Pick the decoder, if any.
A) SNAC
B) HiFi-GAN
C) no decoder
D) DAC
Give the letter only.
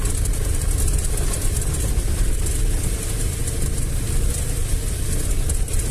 C